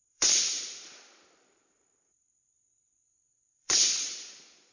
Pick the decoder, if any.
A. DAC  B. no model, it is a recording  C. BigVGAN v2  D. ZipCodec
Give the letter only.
C